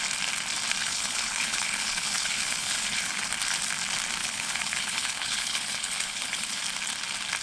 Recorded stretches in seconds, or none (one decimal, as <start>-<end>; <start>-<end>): 0.0-0.8; 3.2-4.2; 6.6-7.4